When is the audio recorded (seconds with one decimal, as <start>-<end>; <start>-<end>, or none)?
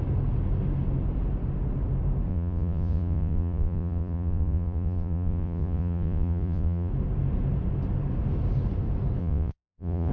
0.0-2.3; 6.9-9.2